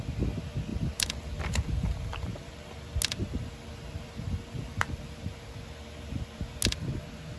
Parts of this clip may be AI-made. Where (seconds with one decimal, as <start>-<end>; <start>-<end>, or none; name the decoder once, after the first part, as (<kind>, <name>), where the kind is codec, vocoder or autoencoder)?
0.7-2.5 (vocoder, BigVGAN v2); 3.2-5.2